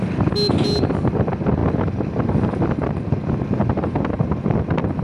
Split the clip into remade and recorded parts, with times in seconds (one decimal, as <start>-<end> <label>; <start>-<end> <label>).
0.0-5.0 recorded